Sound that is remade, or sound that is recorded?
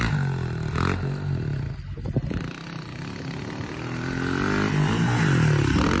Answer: recorded